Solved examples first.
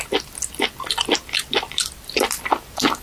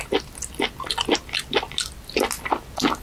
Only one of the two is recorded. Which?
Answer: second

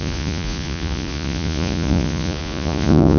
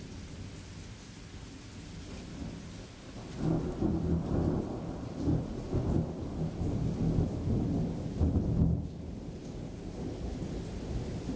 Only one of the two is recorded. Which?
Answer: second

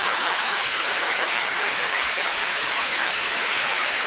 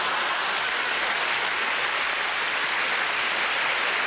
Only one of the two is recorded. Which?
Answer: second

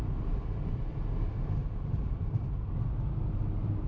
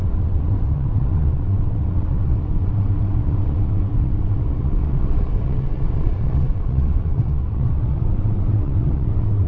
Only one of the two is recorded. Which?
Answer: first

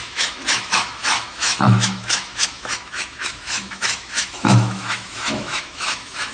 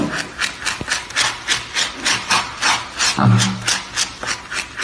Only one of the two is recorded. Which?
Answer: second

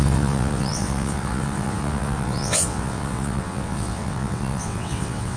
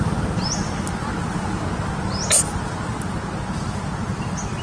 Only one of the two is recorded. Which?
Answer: second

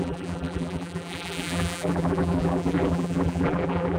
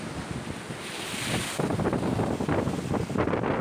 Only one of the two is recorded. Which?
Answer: second